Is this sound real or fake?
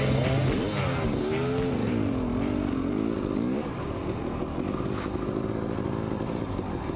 real